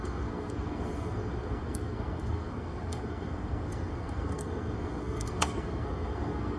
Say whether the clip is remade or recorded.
remade